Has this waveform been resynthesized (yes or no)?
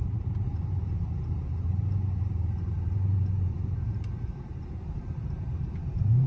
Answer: yes